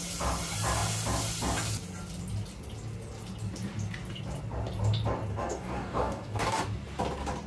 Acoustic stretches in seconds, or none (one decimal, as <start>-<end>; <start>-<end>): 0.0-5.3; 6.6-7.5